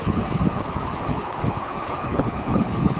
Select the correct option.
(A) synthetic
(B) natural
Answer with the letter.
A